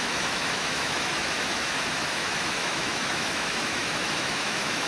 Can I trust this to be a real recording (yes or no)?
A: no